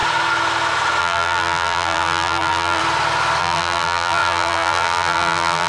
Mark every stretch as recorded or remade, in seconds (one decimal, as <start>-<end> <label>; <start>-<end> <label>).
0.0-1.0 recorded; 1.0-2.8 remade; 2.8-3.4 recorded; 3.4-5.7 remade